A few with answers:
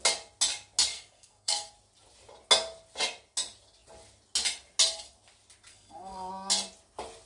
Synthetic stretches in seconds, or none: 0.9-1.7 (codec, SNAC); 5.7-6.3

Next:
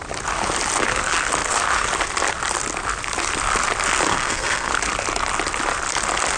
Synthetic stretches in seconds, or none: 4.1-4.7 (codec, SNAC)

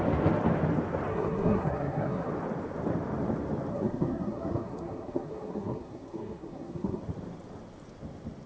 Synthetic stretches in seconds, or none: 1.1-2.3 (codec, SNAC); 3.7-7.0

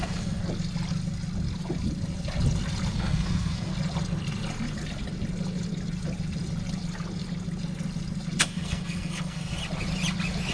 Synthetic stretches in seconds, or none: 0.0-0.4 (codec, SNAC); 2.9-3.7; 8.4-9.6

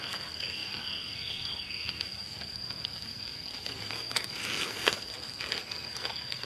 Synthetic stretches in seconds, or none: 0.0-6.5 (codec, SNAC)

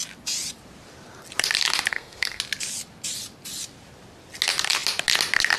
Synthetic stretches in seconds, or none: 1.9-2.4 (codec, SNAC)